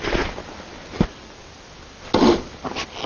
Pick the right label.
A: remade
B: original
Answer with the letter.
B